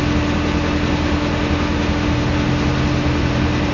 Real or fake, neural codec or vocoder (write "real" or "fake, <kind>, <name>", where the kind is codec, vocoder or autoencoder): real